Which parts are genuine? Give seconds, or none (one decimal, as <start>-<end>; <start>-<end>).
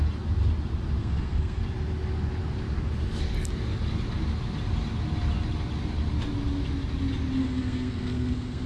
0.0-1.0; 1.6-7.4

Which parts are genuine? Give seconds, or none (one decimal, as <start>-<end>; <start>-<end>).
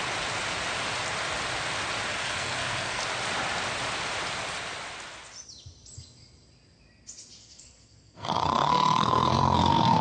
0.0-2.1; 3.0-7.4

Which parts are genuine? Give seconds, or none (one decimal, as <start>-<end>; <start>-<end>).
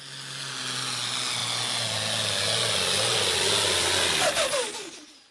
0.0-5.3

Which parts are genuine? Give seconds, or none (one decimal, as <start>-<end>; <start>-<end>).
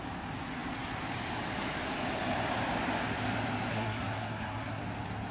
0.0-3.7; 4.8-5.3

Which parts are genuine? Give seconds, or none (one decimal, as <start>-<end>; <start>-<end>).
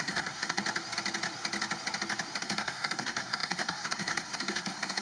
0.6-2.4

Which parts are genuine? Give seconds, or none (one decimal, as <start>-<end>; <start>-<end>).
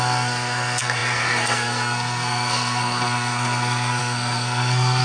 none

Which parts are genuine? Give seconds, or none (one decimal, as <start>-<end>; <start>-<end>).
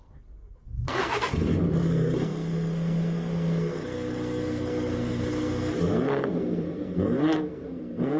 none